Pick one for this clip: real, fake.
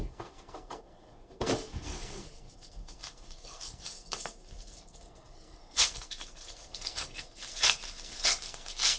fake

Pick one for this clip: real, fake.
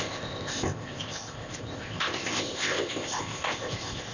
fake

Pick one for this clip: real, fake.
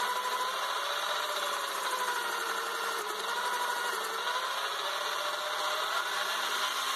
real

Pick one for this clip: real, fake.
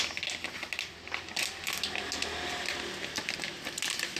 real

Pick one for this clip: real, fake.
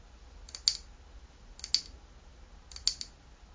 real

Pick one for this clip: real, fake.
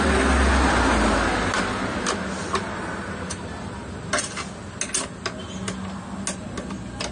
real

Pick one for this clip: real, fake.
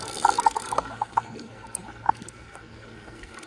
fake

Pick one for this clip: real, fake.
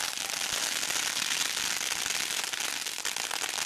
real